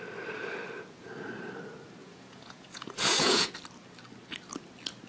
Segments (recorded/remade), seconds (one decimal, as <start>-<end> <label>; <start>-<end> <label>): 0.0-2.0 recorded; 2.0-3.5 remade; 3.5-5.1 recorded